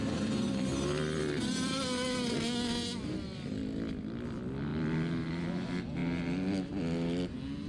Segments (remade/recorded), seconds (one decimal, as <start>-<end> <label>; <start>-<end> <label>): 0.0-4.7 recorded; 4.7-5.3 remade; 5.3-7.7 recorded